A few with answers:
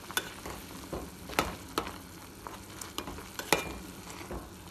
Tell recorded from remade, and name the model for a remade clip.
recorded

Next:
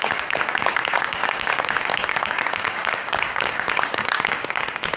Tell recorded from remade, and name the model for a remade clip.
remade, codec, DAC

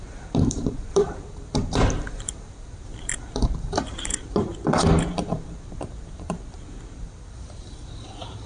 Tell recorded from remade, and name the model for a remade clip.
remade, vocoder, BigVGAN v2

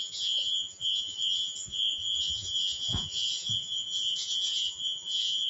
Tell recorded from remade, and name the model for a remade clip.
remade, vocoder, Vocos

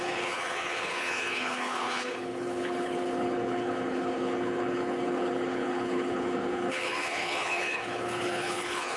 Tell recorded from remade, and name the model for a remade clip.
remade, codec, HILCodec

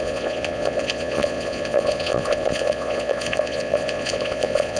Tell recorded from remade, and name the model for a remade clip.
remade, vocoder, Vocos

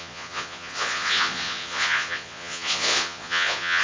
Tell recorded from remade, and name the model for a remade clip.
remade, vocoder, Vocos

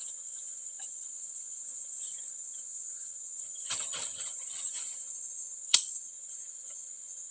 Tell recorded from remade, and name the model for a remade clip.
remade, vocoder, HiFi-GAN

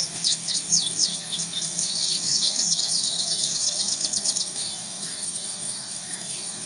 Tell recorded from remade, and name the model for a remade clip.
remade, codec, DAC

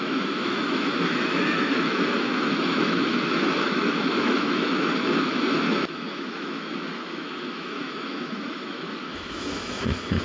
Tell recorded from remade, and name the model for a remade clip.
remade, autoencoder, DAC-VAE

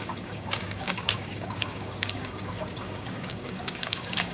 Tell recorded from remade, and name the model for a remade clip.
remade, codec, DAC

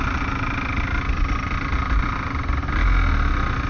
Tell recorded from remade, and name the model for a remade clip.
recorded